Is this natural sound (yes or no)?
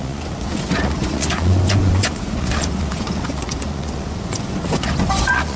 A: no